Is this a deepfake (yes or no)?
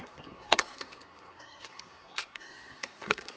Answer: yes